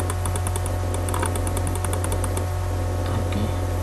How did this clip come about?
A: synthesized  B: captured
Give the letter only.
B